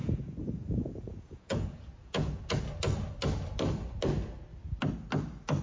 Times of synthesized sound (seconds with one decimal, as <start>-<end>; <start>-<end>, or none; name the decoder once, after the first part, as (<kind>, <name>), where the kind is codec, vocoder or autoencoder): 0.0-2.6 (vocoder, Vocos)